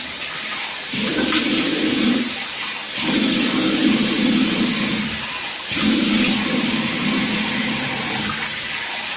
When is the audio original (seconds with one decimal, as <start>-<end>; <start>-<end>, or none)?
1.1-1.9; 2.8-3.4